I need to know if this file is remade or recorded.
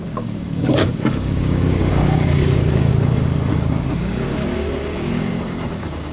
remade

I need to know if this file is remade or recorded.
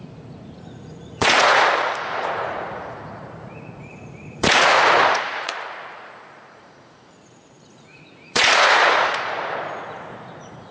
remade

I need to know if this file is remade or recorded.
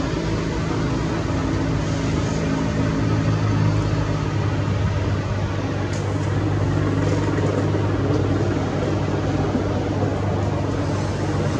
recorded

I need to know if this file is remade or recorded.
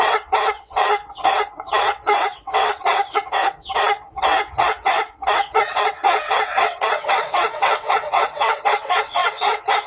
remade